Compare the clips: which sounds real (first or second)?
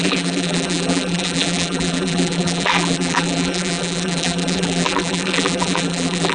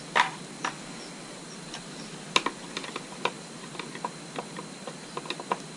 second